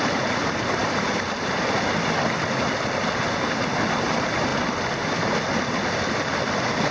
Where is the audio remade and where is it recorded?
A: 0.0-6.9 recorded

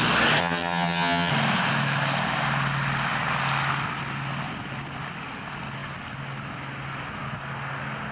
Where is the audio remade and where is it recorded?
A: 0.0-0.4 recorded; 0.4-1.3 remade; 1.3-8.1 recorded

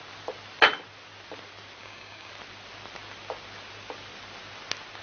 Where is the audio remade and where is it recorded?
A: 0.0-1.8 recorded; 1.8-2.3 remade; 2.3-5.0 recorded